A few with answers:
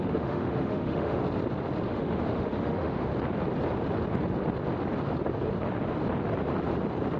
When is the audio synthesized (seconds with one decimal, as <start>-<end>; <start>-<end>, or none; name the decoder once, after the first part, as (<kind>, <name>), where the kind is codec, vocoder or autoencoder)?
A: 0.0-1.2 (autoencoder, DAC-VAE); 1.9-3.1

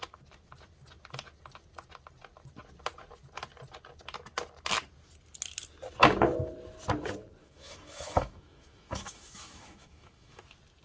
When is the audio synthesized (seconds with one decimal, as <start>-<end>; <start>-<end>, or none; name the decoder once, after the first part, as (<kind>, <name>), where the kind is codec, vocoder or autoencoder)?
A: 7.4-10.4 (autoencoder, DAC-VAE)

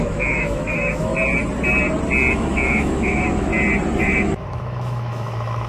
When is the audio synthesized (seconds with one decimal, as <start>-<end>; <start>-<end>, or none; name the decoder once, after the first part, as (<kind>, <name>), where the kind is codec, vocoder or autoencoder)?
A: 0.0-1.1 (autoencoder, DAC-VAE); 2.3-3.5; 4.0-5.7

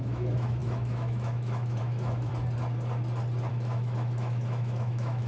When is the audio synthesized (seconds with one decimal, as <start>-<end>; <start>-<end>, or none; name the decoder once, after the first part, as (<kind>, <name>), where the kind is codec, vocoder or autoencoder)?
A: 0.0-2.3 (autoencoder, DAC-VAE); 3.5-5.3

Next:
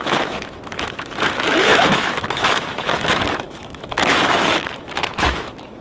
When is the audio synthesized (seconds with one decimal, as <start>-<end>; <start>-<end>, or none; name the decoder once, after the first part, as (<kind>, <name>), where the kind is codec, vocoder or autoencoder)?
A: 0.0-5.8 (autoencoder, DAC-VAE)

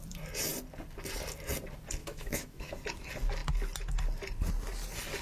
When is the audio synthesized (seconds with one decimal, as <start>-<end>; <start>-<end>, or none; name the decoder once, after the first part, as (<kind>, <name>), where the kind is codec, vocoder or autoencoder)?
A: 2.0-2.7 (autoencoder, DAC-VAE)

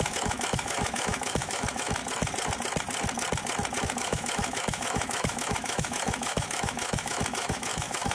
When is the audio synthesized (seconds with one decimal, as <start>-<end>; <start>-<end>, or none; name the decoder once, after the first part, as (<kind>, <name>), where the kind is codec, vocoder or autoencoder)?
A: 0.0-2.0 (autoencoder, DAC-VAE); 3.8-8.1